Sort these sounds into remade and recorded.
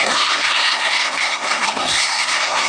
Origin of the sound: remade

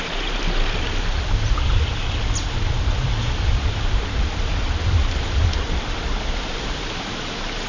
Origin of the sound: recorded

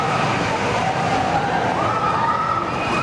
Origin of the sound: recorded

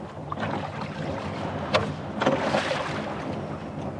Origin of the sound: recorded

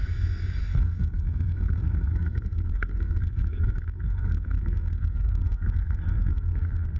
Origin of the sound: remade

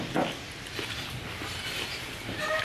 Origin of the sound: recorded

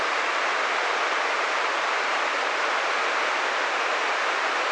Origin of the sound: recorded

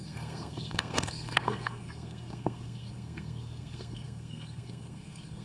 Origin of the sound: remade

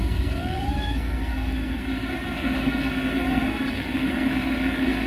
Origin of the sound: remade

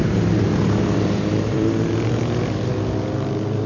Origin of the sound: recorded